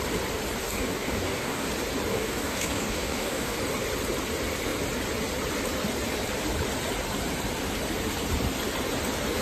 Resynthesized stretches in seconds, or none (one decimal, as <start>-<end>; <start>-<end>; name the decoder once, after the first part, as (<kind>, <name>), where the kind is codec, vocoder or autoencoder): 0.6-1.7 (codec, DAC); 2.1-3.6